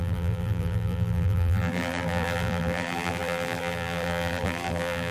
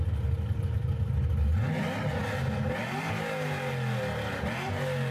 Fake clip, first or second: first